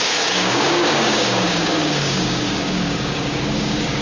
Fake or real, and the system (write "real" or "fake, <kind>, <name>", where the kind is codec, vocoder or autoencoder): fake, codec, DAC